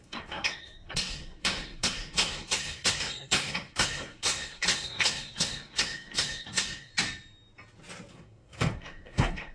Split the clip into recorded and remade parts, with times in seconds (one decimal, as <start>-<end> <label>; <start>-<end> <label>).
0.0-6.9 remade; 6.9-8.1 recorded; 8.1-9.5 remade